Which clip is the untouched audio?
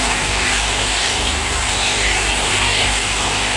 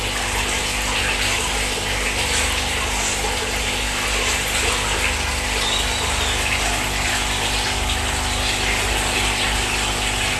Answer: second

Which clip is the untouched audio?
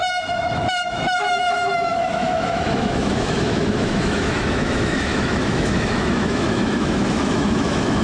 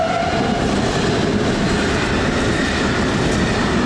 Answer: second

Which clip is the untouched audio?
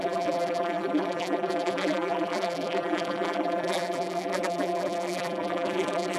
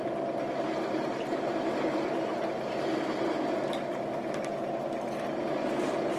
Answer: second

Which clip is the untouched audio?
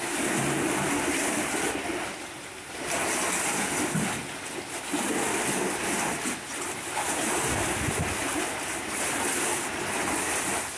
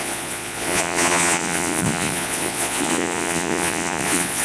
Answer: first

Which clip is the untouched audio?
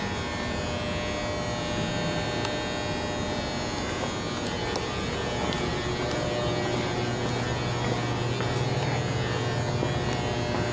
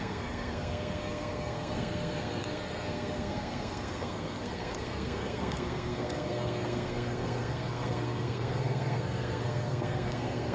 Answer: first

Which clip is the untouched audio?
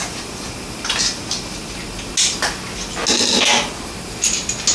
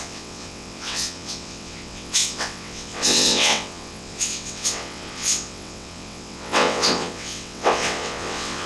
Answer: first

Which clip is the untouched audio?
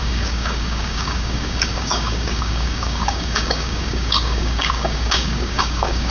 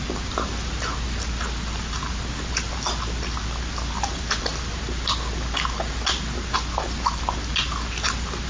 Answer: second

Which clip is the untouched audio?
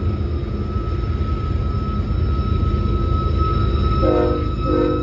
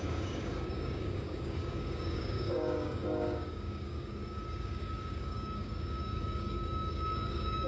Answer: first